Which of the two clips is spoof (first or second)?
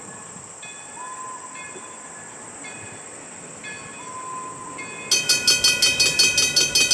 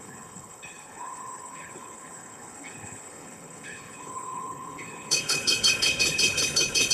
second